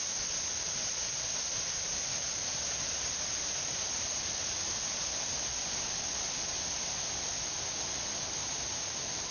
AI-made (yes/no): no